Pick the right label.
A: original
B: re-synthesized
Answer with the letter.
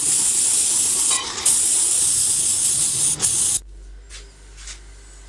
A